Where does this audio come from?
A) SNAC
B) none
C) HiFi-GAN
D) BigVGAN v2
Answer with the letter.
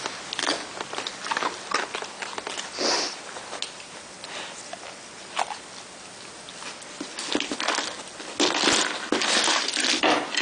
B